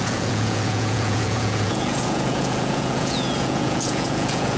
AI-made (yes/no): yes